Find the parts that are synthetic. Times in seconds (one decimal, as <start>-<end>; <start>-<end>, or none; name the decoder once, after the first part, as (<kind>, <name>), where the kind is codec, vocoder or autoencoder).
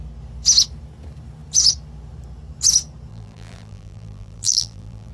3.1-5.1 (vocoder, BigVGAN v2)